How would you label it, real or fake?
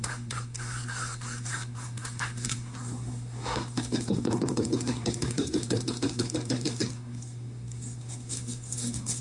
fake